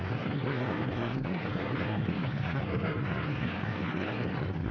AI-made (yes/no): yes